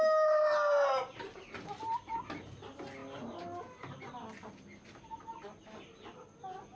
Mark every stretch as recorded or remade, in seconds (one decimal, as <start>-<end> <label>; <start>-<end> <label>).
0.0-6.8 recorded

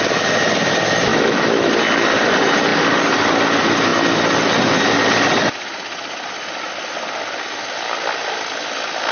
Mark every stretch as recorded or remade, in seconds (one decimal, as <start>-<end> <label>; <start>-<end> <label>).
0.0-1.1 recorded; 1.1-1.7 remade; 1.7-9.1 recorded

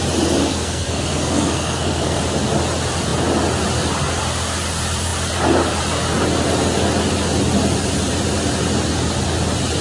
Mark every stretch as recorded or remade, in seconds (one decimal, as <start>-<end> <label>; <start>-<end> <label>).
0.0-0.5 recorded; 0.5-2.2 remade; 2.2-9.8 recorded